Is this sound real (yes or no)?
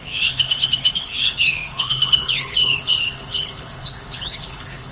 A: no